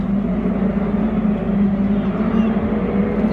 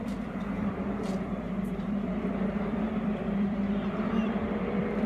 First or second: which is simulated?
second